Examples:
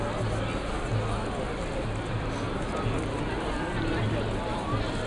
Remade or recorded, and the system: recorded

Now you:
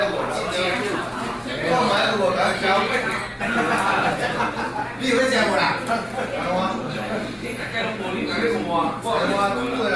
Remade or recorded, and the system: recorded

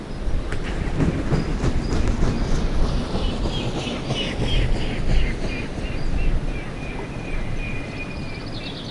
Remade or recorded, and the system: recorded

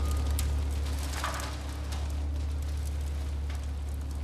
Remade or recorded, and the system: recorded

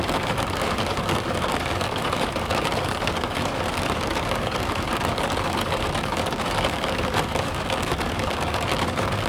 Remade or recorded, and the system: remade, codec, DAC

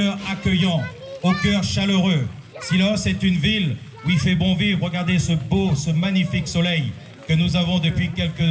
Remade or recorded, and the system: recorded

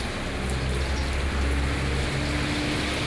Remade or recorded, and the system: recorded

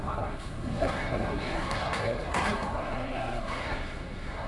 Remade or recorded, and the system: remade, codec, SNAC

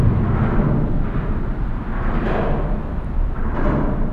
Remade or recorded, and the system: recorded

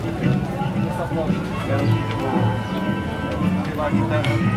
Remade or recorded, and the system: recorded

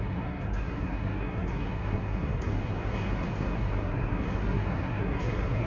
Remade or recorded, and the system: remade, codec, SNAC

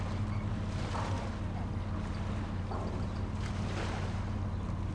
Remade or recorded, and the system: recorded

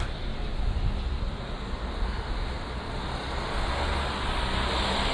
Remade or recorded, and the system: recorded